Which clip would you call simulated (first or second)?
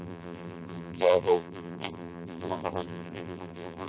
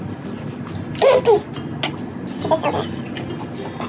first